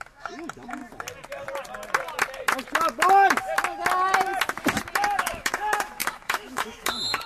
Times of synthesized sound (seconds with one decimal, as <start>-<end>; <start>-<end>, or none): 0.0-0.8; 5.2-7.3